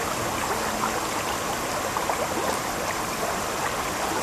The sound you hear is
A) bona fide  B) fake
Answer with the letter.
A